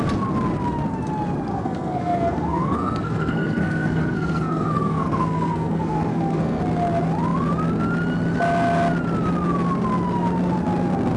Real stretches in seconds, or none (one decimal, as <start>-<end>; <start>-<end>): 0.0-1.5; 6.6-11.2